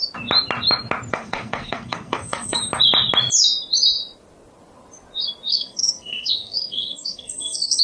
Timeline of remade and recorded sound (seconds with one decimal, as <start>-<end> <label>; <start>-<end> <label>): 0.0-1.1 recorded; 1.1-2.6 remade; 2.6-5.5 recorded; 5.5-7.8 remade